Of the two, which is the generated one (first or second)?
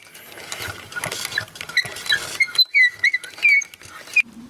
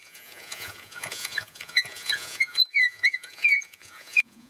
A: second